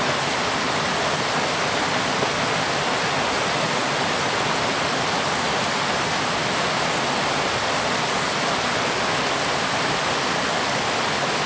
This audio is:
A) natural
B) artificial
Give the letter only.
A